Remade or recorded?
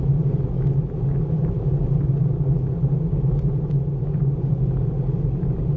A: recorded